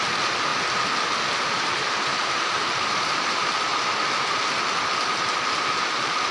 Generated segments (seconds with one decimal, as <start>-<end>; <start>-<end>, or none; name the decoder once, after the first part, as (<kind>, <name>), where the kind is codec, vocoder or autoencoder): 0.0-0.5 (vocoder, BigVGAN v2); 1.5-3.7; 5.5-6.3